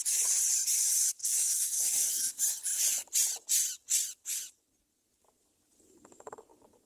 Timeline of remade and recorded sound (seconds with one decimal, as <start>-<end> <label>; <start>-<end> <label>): 0.0-1.2 recorded; 1.2-2.3 remade; 2.3-6.9 recorded